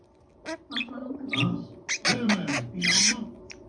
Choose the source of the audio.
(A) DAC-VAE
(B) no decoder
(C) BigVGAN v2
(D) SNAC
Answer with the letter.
B